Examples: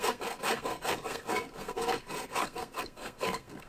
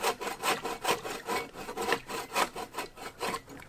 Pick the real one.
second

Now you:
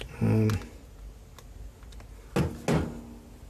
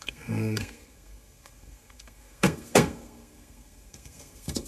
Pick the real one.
first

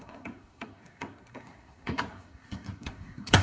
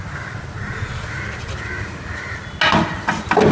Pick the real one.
second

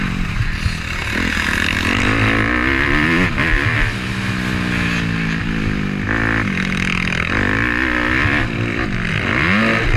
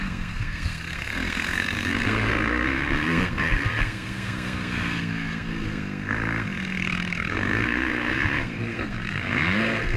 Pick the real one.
first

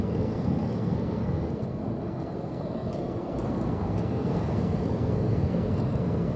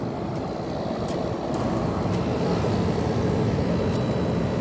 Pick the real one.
second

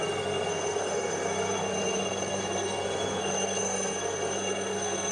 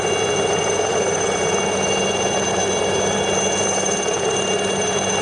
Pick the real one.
second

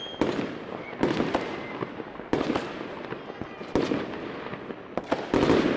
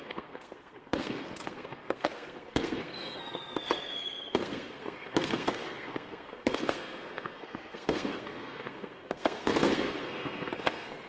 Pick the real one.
first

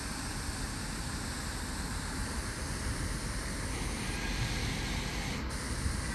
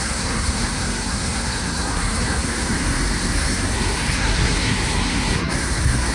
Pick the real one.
first